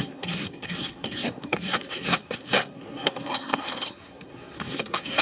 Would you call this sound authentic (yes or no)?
no